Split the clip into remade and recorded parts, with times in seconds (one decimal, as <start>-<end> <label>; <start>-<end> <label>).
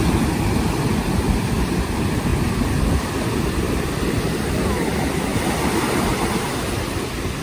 0.0-7.4 recorded